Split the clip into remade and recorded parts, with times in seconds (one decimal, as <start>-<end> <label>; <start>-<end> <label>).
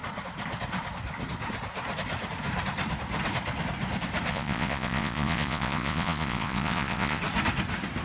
0.0-4.3 recorded; 4.3-7.2 remade; 7.2-8.0 recorded